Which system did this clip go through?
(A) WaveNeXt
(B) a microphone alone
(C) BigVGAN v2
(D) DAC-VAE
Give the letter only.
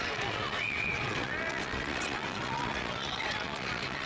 A